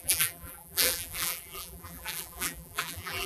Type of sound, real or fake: fake